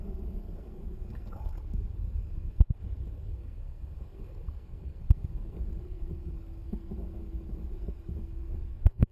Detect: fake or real fake